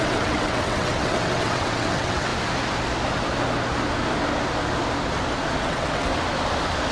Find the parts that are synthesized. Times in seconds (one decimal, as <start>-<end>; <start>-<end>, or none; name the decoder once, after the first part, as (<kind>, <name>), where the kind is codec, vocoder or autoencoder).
0.0-2.3 (vocoder, WaveNeXt); 5.6-6.1